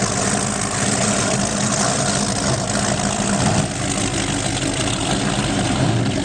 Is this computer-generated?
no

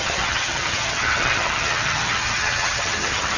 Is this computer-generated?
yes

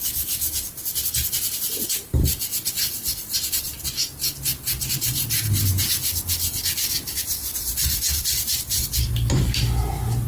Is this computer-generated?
no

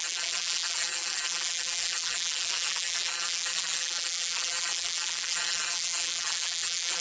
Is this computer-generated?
yes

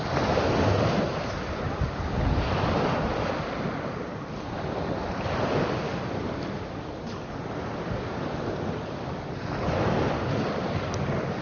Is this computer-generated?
no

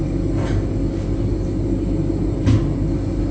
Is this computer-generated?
no